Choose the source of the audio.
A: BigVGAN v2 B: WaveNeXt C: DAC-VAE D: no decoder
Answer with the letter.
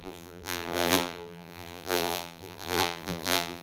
A